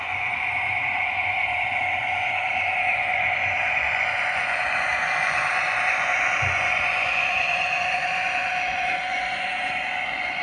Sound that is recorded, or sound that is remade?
remade